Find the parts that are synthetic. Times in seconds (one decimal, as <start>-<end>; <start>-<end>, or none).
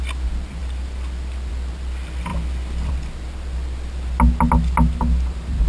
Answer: none